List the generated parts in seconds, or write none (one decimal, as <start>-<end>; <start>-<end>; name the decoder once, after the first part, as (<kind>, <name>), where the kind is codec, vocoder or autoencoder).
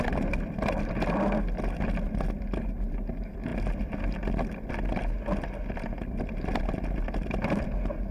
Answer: none